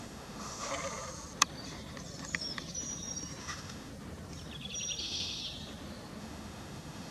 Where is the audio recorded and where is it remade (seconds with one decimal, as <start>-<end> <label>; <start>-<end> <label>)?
0.0-0.7 remade; 0.7-3.4 recorded; 3.4-3.9 remade; 3.9-5.0 recorded; 5.0-5.4 remade; 5.4-6.2 recorded; 6.2-7.1 remade